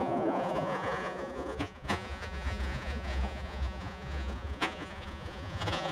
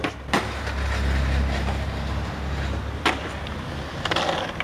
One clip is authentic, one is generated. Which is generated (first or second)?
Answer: first